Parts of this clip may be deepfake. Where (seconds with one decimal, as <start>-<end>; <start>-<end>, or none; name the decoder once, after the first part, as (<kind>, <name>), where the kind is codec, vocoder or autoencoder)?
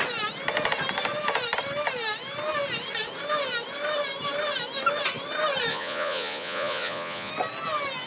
5.7-7.3 (vocoder, Vocos)